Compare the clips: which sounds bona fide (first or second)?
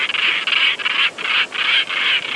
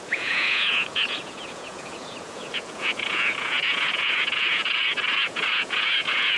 first